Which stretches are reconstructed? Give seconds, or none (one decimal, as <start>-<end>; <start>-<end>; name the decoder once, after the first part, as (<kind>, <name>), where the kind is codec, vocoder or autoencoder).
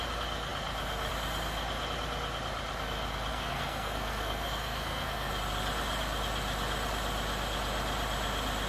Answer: 3.3-5.3 (codec, SNAC)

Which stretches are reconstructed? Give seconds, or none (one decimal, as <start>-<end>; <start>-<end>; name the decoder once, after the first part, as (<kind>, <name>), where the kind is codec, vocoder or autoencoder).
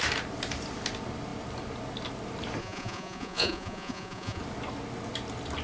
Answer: 2.6-4.4 (vocoder, Vocos)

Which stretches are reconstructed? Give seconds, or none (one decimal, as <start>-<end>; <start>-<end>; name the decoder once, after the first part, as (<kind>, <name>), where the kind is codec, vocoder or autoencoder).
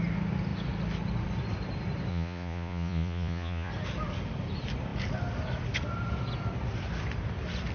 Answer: 2.1-3.7 (vocoder, Vocos)